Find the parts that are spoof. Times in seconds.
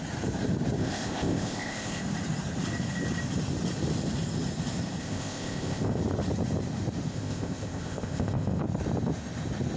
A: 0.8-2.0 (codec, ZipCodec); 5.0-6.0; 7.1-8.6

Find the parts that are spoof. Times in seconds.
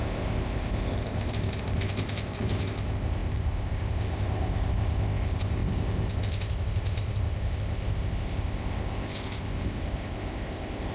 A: 0.0-10.9 (codec, ZipCodec)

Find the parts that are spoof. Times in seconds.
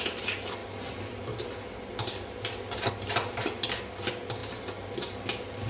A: none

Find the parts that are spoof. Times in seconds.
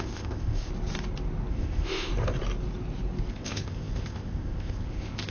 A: 0.0-0.7 (codec, ZipCodec); 1.5-2.1; 3.3-5.3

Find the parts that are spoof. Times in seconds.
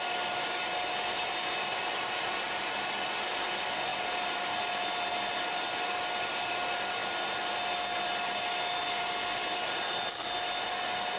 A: none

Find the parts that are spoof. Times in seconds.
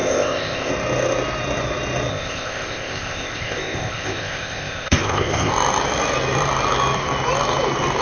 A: 0.0-0.7 (codec, ZipCodec); 2.1-5.5